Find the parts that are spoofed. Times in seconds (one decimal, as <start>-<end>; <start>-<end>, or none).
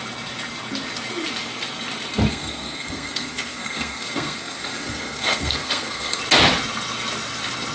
2.3-6.2